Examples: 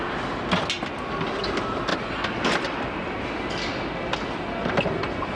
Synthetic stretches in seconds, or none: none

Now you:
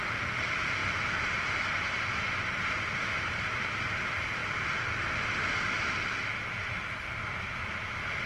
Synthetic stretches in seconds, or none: 0.8-2.0 (vocoder, BigVGAN v2)

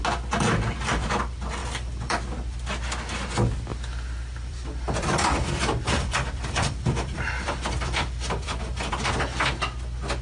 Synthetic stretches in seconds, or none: 1.6-2.2 (vocoder, BigVGAN v2); 3.7-8.9

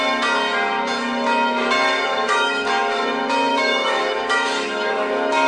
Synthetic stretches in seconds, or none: 2.1-2.7 (autoencoder, DAC-VAE); 3.5-5.5

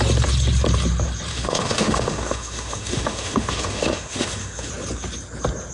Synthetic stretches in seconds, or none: 1.3-4.7 (autoencoder, DAC-VAE)

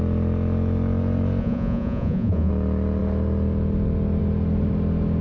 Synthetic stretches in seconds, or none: 1.4-2.5 (vocoder, Vocos)

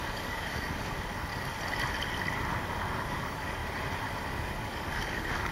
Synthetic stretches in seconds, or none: 0.0-1.3 (codec, DAC); 2.7-3.6; 4.4-5.5